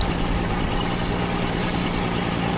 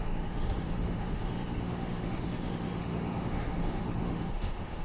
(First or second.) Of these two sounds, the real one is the first